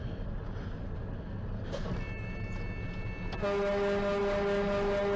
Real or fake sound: real